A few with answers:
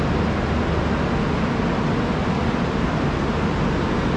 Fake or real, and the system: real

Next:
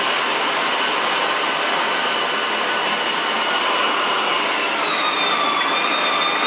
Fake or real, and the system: real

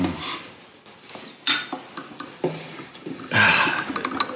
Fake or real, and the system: real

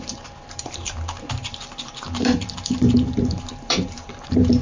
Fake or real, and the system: fake, vocoder, BigVGAN v2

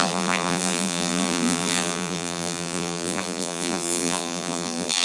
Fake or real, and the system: fake, vocoder, BigVGAN v2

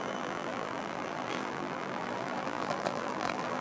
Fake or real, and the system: fake, vocoder, BigVGAN v2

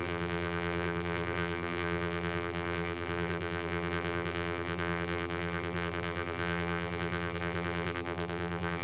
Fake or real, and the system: fake, vocoder, BigVGAN v2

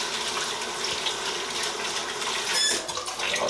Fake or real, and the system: real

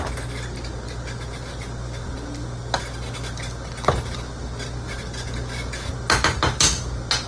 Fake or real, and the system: real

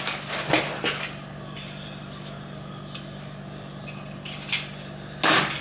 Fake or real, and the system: real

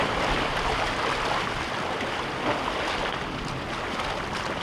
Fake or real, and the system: real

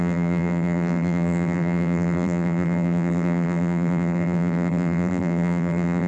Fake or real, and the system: fake, vocoder, BigVGAN v2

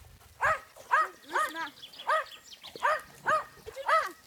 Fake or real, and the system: real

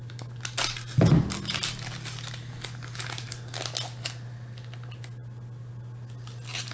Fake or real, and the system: real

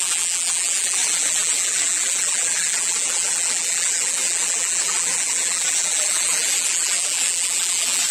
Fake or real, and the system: fake, vocoder, BigVGAN v2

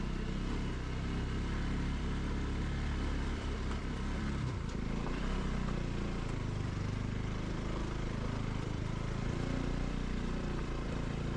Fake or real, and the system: fake, vocoder, BigVGAN v2